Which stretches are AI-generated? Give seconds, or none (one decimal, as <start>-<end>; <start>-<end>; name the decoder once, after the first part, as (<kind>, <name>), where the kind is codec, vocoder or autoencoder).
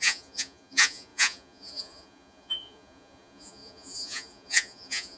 0.0-5.2 (vocoder, Vocos)